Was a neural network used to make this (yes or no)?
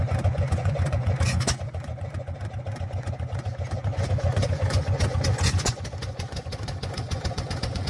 yes